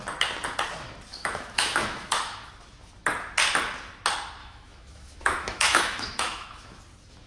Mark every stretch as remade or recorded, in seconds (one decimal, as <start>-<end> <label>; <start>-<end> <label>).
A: 0.0-1.1 recorded; 1.1-2.5 remade; 2.5-4.4 recorded; 4.4-6.8 remade; 6.8-7.3 recorded